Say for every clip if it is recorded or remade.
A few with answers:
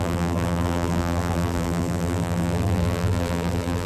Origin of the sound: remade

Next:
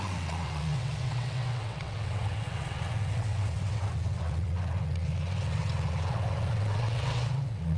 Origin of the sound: remade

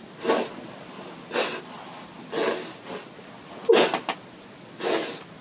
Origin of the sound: recorded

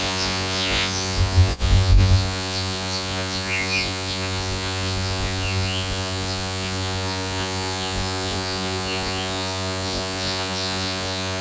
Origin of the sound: remade